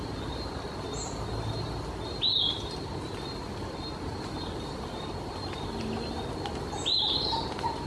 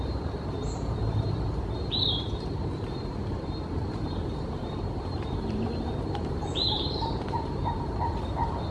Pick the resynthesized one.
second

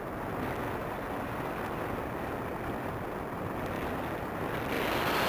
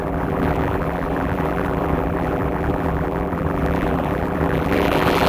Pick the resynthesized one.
second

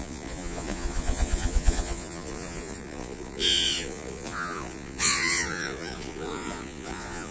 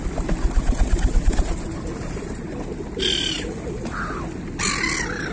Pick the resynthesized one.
first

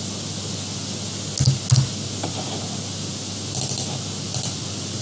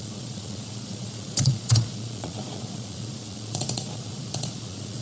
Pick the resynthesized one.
second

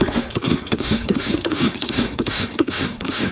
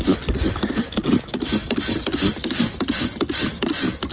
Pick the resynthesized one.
first